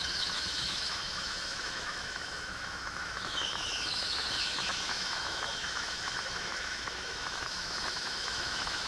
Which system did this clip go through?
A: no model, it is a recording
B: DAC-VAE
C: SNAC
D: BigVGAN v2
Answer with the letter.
B